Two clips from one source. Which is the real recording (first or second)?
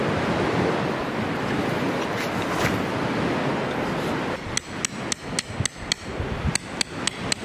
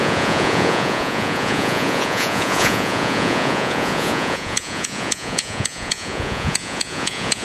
first